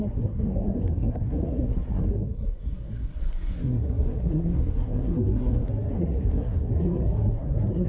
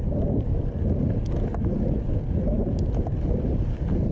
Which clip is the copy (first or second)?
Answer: first